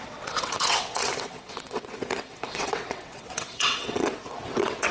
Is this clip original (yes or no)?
no